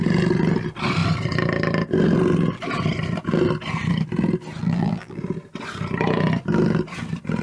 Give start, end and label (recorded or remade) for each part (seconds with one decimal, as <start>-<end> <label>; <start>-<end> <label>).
0.0-4.6 recorded; 4.6-5.2 remade; 5.2-7.4 recorded